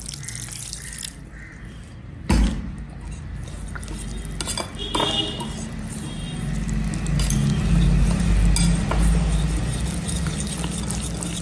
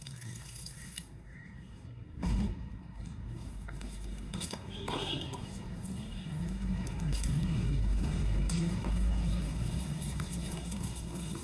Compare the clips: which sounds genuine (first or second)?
first